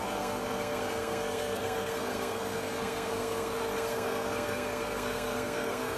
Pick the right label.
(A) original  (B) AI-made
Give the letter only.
B